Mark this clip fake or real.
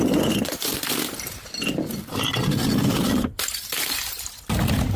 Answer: fake